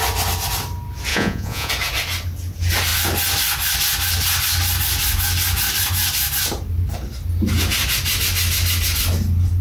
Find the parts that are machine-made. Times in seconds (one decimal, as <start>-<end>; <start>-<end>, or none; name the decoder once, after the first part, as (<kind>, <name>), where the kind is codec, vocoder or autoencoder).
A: 1.1-1.7 (vocoder, Vocos)